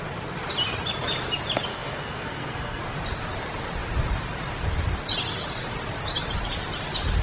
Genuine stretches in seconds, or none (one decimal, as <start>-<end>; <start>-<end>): 0.0-1.7; 2.8-7.2